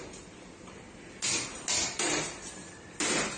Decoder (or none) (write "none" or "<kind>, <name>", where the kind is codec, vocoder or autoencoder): none